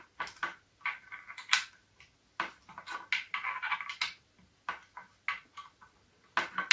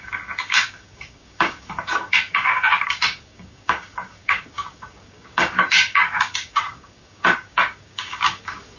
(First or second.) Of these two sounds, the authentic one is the first